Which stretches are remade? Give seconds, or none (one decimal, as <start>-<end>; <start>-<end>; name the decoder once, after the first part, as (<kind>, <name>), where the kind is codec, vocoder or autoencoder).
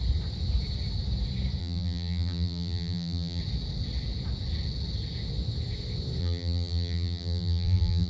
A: 1.6-3.4 (vocoder, BigVGAN v2); 6.2-8.1